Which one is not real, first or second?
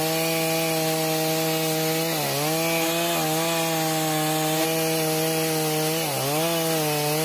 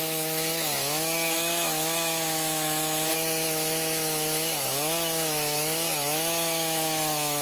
second